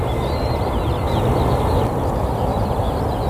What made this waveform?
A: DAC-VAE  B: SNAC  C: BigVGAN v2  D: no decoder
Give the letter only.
D